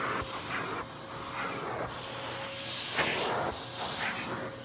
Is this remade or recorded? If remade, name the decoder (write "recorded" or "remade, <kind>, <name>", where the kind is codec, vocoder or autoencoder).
recorded